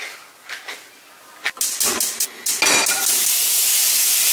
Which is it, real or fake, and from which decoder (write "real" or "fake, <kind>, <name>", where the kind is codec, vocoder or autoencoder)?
real